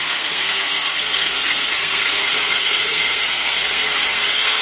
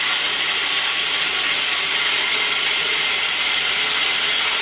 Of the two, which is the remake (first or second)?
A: first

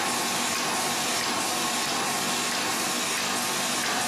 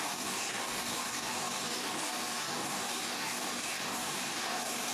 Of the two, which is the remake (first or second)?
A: second